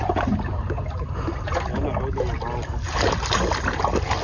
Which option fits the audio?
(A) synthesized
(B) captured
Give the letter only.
B